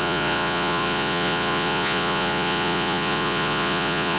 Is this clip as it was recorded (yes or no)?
no